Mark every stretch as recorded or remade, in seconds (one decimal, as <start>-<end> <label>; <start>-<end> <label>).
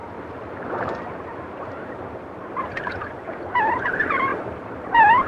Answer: 0.0-3.1 remade; 3.1-4.3 recorded; 4.3-5.3 remade